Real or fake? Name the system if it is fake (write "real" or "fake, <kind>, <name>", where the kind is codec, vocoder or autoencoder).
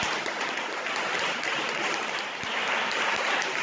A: real